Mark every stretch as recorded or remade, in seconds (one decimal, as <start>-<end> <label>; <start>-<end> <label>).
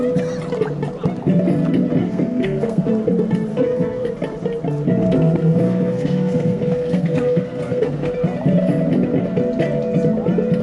0.0-2.0 recorded; 2.0-2.9 remade; 2.9-3.5 recorded; 3.5-4.1 remade; 4.1-5.0 recorded; 5.0-8.1 remade; 8.1-10.6 recorded